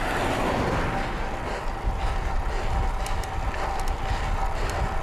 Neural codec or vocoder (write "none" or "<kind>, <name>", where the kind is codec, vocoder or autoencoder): none